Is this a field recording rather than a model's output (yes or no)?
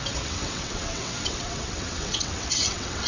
no